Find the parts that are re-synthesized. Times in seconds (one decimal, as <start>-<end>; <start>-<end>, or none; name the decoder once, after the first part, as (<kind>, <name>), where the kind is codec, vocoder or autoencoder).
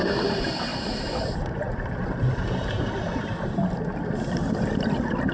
0.7-3.9 (vocoder, BigVGAN v2)